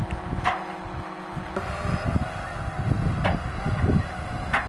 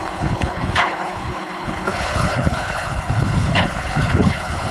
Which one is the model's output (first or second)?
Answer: second